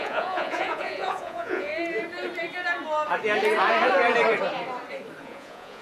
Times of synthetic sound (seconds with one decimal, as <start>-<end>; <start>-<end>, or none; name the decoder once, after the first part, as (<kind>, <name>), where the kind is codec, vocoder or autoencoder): 0.0-1.7 (vocoder, Vocos); 5.2-5.8